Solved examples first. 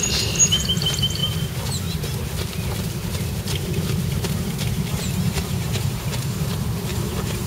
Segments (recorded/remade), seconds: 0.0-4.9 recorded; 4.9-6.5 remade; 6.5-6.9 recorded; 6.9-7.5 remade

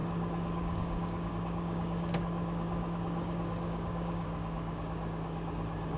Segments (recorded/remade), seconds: 0.0-6.0 remade

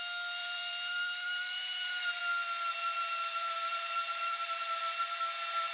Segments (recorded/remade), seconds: 0.0-0.4 recorded; 0.4-2.2 remade; 2.2-2.8 recorded; 2.8-5.2 remade; 5.2-5.7 recorded